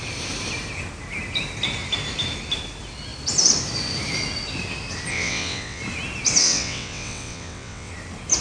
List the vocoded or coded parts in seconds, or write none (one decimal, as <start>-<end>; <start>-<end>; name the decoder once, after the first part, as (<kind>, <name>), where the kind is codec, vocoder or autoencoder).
5.1-5.8 (vocoder, WaveNeXt); 6.4-7.9